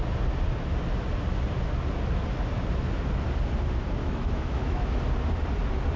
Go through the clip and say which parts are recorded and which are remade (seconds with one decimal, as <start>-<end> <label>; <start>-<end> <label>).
0.0-4.0 recorded; 4.0-5.0 remade; 5.0-6.0 recorded